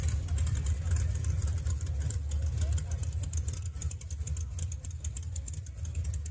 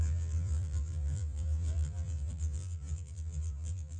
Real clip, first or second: first